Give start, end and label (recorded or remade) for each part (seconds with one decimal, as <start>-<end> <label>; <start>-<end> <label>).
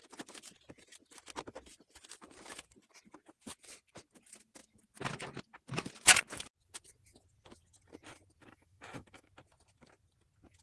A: 0.0-8.4 recorded; 8.4-9.3 remade; 9.3-10.6 recorded